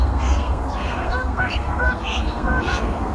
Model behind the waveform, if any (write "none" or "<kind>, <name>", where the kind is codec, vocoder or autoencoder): codec, SNAC